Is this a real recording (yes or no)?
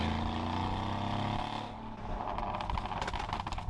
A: yes